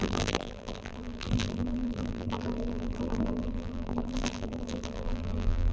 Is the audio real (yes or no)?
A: no